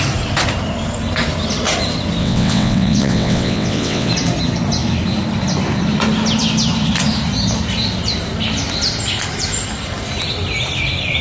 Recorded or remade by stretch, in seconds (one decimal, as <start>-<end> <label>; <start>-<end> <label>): 0.0-2.2 recorded; 2.2-4.1 remade; 4.1-11.2 recorded